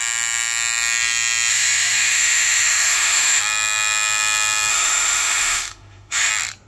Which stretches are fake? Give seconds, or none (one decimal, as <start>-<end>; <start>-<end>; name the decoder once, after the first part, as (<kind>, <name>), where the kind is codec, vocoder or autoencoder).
1.5-3.4 (autoencoder, DAC-VAE); 4.7-6.3